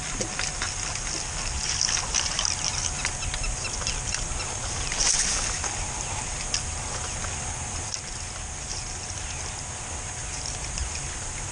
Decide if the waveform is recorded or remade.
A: recorded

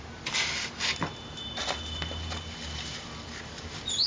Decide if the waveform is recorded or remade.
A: recorded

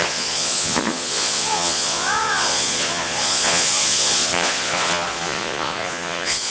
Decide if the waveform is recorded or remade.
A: remade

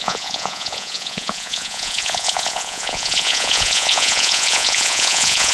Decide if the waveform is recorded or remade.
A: remade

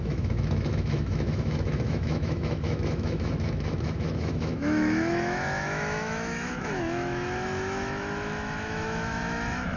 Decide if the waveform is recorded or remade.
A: remade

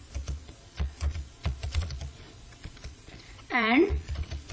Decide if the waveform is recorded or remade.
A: remade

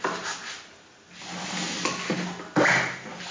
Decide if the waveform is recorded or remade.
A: recorded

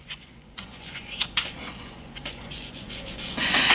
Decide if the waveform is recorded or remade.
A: remade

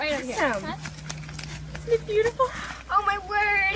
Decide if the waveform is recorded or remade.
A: recorded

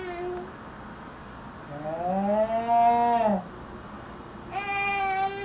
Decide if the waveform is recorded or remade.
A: recorded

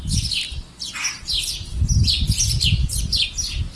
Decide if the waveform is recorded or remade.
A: recorded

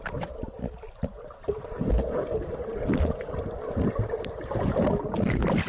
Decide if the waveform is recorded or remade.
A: recorded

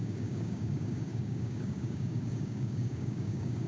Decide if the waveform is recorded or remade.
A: remade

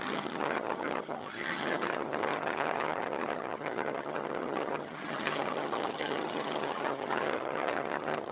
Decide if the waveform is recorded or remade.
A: remade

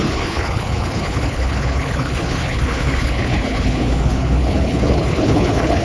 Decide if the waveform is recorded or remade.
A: remade